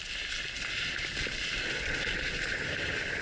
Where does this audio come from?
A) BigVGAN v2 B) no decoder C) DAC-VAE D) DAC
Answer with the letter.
B